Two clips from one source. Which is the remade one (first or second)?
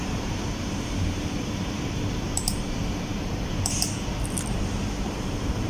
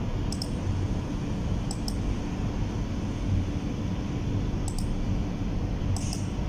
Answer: first